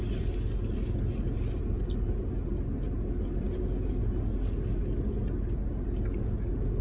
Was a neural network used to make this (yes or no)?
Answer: no